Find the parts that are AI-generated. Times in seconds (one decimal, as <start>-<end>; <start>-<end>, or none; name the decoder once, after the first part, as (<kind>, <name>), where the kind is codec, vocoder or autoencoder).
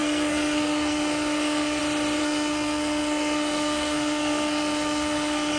0.0-1.8 (codec, SNAC); 2.2-5.6